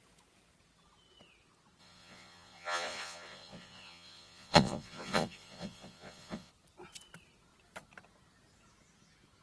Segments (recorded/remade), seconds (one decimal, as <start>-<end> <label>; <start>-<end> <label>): 0.0-1.8 recorded; 1.8-6.5 remade; 6.5-9.4 recorded